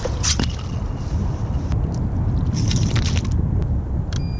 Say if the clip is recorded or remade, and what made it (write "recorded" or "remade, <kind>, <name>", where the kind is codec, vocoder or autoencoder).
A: recorded